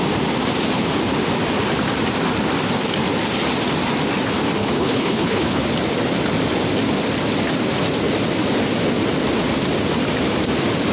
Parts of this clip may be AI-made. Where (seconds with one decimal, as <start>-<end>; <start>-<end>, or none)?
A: 4.6-5.6